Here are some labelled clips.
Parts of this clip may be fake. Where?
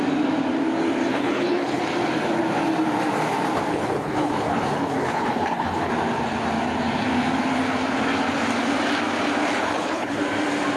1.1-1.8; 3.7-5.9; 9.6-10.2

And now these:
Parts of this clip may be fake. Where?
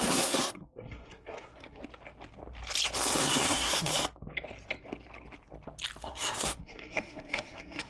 0.0-1.8; 3.2-3.9; 6.0-7.9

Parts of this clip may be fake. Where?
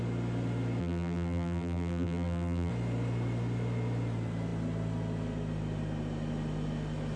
0.8-2.7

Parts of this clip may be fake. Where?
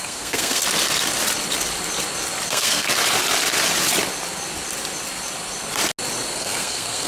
0.0-0.6; 2.5-2.9; 6.3-7.1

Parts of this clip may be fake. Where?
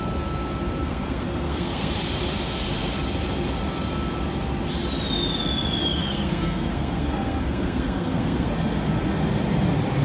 0.8-2.0; 6.0-8.5